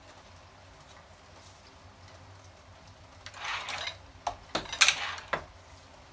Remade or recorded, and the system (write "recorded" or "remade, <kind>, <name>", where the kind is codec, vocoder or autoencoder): recorded